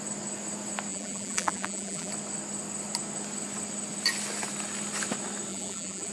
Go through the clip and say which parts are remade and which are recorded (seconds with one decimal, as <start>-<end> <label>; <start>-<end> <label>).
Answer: 0.0-0.9 recorded; 0.9-2.1 remade; 2.1-5.5 recorded; 5.5-6.1 remade